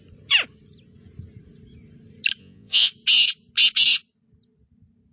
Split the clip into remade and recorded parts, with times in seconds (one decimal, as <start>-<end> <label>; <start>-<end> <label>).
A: 0.0-2.4 recorded; 2.4-2.9 remade; 2.9-5.1 recorded